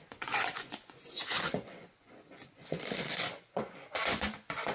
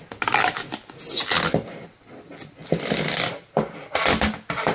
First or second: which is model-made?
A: first